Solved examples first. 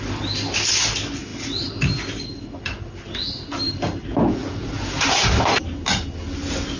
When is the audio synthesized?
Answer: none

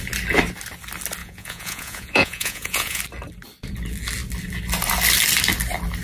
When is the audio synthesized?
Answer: 1.2-3.0

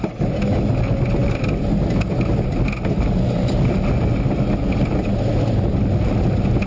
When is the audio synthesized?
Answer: none

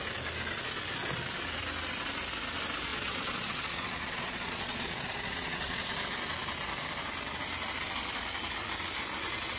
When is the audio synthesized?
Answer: 2.9-5.9

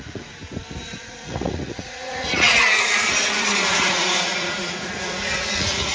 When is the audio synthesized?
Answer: 0.0-0.4; 0.9-5.9

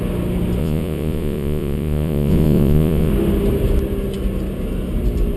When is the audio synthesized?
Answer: 0.6-3.1

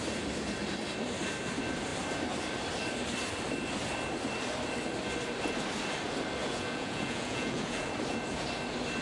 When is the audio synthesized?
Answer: 6.4-7.9

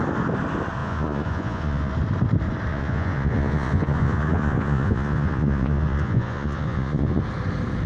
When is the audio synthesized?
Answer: 0.8-1.9; 2.7-7.2